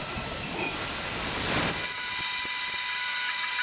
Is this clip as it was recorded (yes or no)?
yes